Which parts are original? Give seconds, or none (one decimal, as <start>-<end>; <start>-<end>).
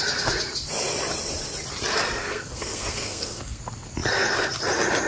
0.0-2.2; 3.6-5.1